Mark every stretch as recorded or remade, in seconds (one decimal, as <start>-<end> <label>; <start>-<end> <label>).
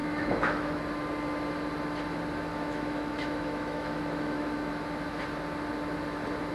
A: 0.0-0.8 remade; 0.8-2.5 recorded; 2.5-4.7 remade; 4.7-6.5 recorded